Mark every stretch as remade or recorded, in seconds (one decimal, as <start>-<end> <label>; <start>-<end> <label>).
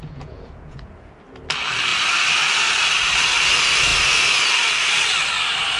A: 0.0-1.1 remade; 1.1-5.8 recorded